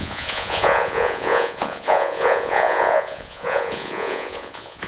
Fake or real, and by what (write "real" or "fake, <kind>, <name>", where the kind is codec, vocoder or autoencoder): fake, vocoder, Vocos